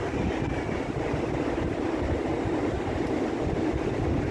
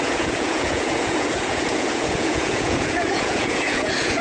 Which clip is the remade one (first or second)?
second